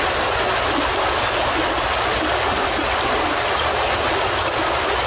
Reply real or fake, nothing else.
real